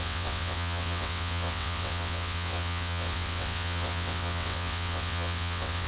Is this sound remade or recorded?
remade